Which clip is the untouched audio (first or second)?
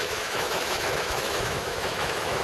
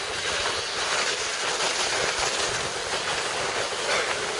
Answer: second